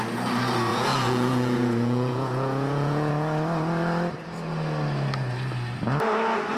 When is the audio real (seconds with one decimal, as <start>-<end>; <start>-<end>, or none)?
0.0-0.7; 3.1-6.6